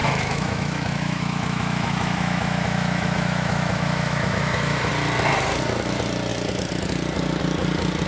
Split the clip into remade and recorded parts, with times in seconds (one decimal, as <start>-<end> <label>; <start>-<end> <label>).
0.0-4.9 remade; 4.9-8.1 recorded